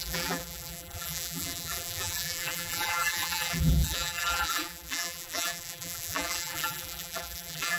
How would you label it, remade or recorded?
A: remade